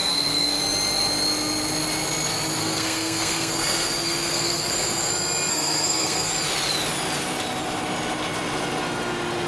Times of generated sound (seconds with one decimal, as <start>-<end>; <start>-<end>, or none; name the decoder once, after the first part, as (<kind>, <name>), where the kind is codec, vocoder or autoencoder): 0.0-0.6 (codec, SNAC); 2.6-5.1; 5.5-6.3